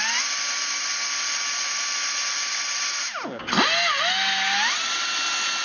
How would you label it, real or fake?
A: real